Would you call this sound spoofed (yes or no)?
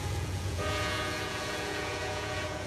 yes